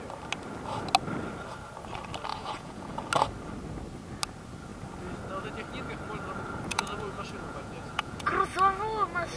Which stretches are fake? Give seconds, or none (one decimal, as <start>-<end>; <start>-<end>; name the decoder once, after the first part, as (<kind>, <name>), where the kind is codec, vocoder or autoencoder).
2.3-3.0 (vocoder, Vocos); 6.7-8.5